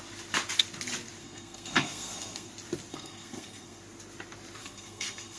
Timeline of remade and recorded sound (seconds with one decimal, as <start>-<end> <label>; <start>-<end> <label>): 0.0-1.2 recorded; 1.2-2.5 remade; 2.5-2.9 recorded; 2.9-3.8 remade; 3.8-4.6 recorded; 4.6-5.4 remade